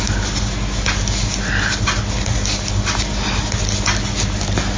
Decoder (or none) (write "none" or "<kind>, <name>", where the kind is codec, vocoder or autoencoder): none